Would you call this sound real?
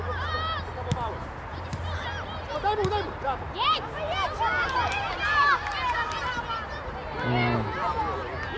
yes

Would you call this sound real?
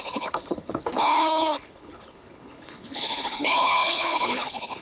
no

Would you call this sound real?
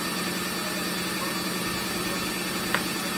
yes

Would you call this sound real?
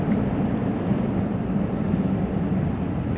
yes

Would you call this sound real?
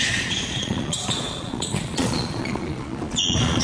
no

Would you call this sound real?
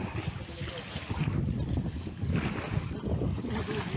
yes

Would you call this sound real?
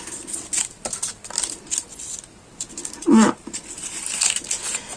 yes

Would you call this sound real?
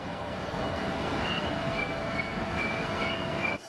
no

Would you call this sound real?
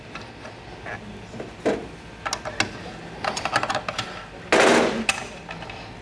yes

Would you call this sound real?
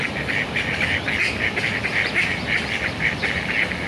yes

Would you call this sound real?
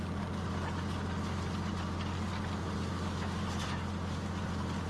yes